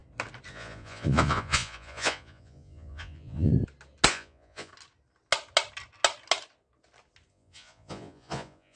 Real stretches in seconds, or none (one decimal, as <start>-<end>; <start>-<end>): 0.0-0.5; 3.5-4.1; 4.7-7.3